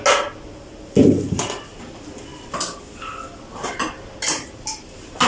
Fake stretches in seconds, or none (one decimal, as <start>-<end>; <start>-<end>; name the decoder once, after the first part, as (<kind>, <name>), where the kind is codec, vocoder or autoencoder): none